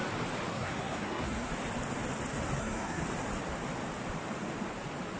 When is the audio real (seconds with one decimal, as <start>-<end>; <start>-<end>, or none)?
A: 0.0-0.5; 1.5-2.6; 3.0-5.2